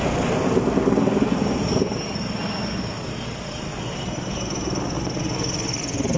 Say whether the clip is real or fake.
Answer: real